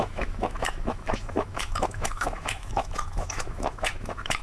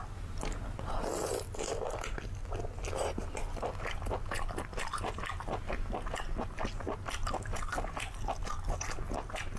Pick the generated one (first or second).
first